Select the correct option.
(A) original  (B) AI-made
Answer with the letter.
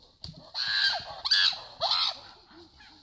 A